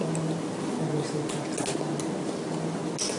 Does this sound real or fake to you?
real